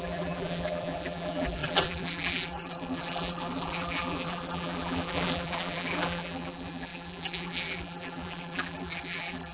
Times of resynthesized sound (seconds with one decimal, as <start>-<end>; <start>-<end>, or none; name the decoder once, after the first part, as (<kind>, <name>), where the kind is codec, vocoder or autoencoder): 0.0-9.5 (vocoder, BigVGAN v2)